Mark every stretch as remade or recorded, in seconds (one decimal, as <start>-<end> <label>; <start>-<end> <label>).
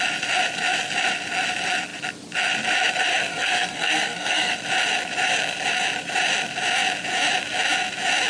0.0-3.3 recorded; 3.3-4.6 remade; 4.6-8.3 recorded